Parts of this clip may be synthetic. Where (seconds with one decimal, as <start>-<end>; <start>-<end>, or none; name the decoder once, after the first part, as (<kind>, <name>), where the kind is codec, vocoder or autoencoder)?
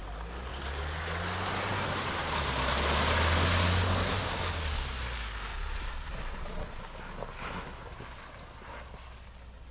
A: 5.5-6.8 (vocoder, Vocos)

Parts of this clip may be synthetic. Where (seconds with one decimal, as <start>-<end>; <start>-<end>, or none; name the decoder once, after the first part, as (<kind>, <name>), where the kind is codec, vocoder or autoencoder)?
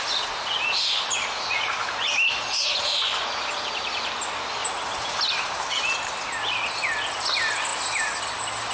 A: 2.5-3.1 (vocoder, Vocos)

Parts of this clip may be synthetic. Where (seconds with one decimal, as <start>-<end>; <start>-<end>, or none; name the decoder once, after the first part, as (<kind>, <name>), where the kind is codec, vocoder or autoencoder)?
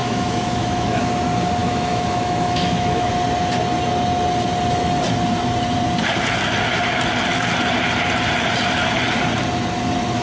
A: 0.0-1.0 (autoencoder, DAC-VAE); 1.6-3.1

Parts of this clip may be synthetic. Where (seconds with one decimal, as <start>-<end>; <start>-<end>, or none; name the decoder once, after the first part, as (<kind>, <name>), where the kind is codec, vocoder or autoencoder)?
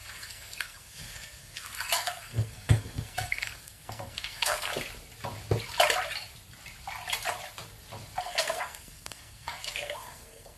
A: 0.0-4.7 (codec, SNAC); 8.2-10.6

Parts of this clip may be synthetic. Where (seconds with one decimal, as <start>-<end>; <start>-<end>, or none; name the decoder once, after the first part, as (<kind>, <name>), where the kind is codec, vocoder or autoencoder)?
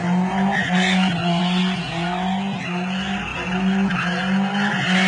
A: 0.6-1.4 (vocoder, Vocos)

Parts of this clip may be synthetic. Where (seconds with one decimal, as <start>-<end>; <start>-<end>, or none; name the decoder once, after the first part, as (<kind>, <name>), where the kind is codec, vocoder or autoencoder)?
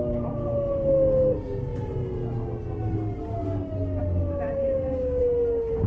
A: 4.6-5.2 (codec, DAC)